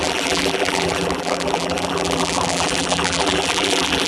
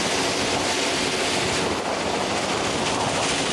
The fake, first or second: first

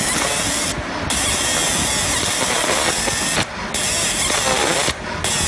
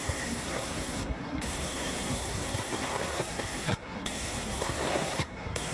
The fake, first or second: second